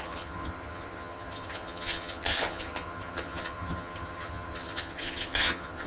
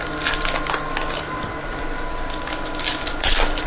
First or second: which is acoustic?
second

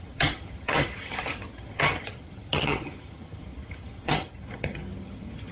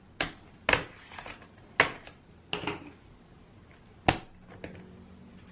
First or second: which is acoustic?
second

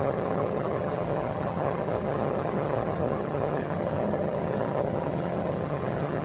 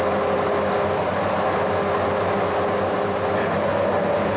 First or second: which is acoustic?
second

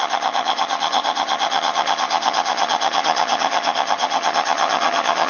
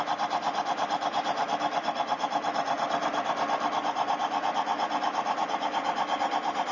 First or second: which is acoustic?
second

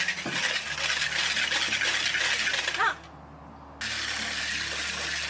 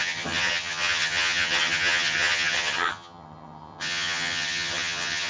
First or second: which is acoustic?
first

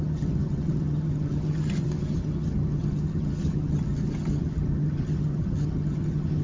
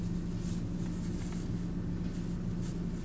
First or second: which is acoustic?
second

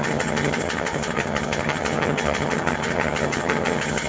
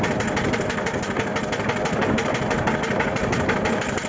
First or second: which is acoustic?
second